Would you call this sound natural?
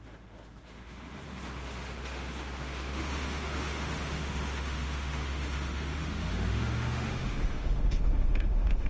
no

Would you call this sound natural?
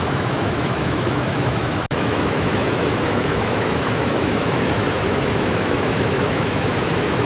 no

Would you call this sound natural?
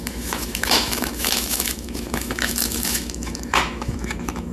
no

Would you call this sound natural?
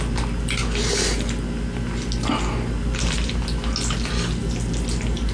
yes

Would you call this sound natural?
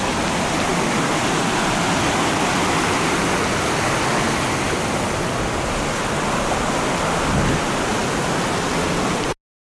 yes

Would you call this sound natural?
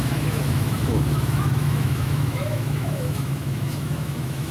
no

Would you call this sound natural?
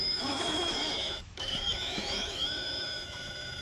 no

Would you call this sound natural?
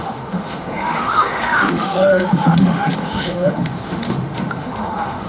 no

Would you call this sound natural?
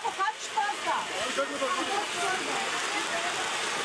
yes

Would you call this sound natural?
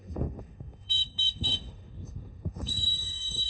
no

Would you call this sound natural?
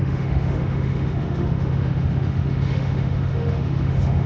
no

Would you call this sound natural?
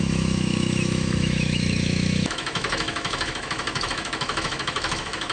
no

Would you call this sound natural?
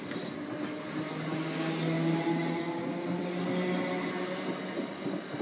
yes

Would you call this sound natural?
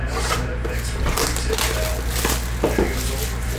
yes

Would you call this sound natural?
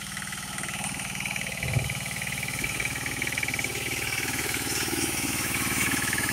no